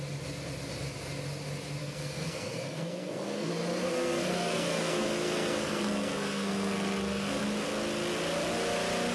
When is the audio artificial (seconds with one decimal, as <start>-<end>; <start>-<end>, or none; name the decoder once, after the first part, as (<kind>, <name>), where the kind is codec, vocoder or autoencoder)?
1.8-3.5 (codec, SNAC); 3.9-7.4